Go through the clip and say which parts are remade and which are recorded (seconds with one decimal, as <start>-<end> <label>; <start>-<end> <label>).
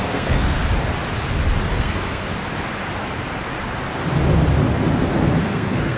0.0-0.6 remade; 0.6-1.8 recorded; 1.8-2.3 remade; 2.3-5.4 recorded; 5.4-6.0 remade